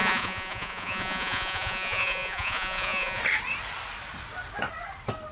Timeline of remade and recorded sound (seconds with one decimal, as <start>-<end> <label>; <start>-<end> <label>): 0.0-3.2 remade; 3.2-5.3 recorded